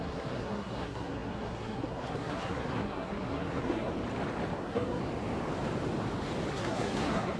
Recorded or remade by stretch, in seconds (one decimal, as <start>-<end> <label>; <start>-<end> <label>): 0.0-3.9 remade; 3.9-4.6 recorded; 4.6-5.0 remade; 5.0-6.5 recorded; 6.5-7.4 remade

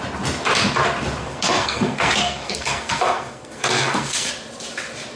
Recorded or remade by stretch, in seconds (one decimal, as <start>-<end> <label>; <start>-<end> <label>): 0.0-1.2 recorded; 1.2-4.3 remade; 4.3-5.2 recorded

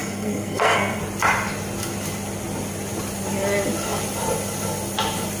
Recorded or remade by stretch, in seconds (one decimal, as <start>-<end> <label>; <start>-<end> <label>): 0.0-1.0 remade; 1.0-5.4 recorded

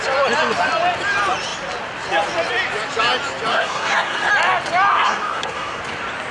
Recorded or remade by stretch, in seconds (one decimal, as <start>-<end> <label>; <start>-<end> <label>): 0.0-3.5 recorded; 3.5-4.3 remade; 4.3-4.9 recorded; 4.9-5.8 remade; 5.8-6.3 recorded

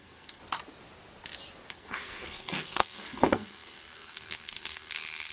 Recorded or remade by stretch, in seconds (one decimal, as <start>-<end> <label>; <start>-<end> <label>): 0.0-0.4 remade; 0.4-1.7 recorded; 1.7-5.3 remade

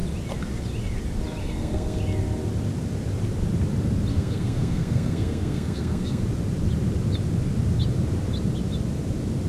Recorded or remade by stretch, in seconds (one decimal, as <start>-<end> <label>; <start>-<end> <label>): 0.0-1.4 recorded; 1.4-2.0 remade; 2.0-4.1 recorded; 4.1-6.2 remade; 6.2-9.5 recorded

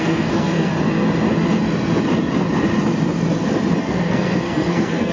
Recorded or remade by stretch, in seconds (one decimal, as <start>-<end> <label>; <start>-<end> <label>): 0.0-0.7 remade; 0.7-3.8 recorded; 3.8-5.1 remade

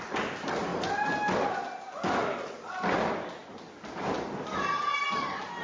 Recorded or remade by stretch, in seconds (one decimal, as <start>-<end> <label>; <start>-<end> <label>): 0.0-5.6 recorded